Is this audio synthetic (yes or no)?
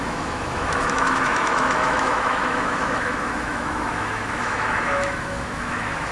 yes